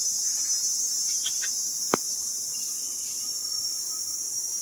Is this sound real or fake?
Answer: real